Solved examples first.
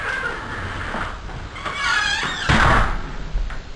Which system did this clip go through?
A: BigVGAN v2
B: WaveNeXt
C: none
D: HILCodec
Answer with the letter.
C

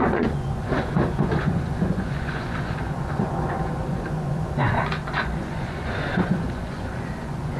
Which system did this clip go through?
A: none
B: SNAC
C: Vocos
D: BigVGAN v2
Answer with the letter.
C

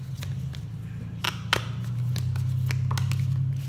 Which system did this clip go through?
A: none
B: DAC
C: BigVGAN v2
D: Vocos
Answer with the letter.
A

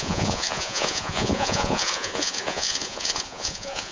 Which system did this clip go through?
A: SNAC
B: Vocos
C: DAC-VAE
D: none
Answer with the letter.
B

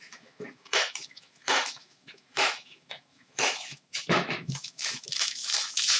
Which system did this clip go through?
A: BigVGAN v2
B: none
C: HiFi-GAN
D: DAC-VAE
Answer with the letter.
D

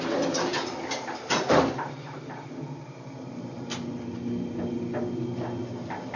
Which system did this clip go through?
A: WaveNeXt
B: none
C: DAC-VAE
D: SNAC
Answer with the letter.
B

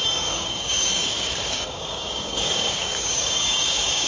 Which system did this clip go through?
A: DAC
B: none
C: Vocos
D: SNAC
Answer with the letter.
A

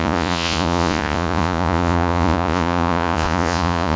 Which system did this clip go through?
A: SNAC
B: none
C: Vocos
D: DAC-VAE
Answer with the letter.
C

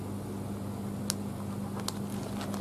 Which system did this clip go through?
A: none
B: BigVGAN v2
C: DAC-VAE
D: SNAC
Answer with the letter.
A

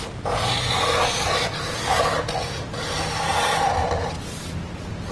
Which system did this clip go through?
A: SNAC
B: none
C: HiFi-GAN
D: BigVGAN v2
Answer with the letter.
B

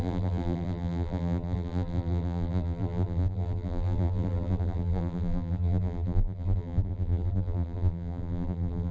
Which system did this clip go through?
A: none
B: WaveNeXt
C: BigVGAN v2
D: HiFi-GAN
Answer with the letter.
C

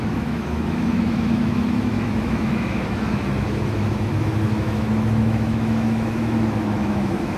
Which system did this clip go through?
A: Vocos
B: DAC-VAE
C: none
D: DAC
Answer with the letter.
B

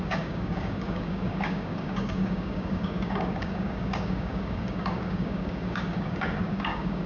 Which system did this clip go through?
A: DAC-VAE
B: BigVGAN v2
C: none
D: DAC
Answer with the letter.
D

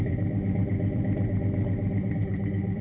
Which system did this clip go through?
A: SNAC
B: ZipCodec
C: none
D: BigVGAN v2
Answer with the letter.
D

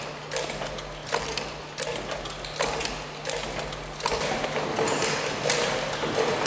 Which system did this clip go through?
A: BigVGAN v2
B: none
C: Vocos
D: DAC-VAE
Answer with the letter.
B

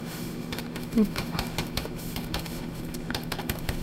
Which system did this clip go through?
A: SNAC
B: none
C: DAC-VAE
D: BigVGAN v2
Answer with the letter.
C